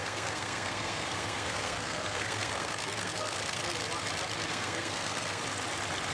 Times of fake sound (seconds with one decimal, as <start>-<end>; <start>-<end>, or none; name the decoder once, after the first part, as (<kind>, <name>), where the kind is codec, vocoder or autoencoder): 0.0-3.6 (codec, SNAC); 4.5-5.4